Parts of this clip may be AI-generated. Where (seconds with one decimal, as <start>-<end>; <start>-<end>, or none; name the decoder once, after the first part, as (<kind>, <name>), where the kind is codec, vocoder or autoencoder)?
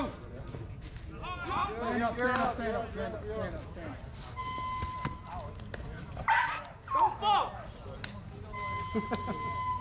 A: none